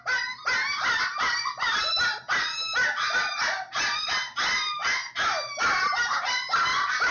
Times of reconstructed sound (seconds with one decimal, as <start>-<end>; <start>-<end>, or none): none